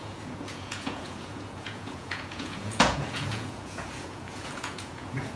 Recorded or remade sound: remade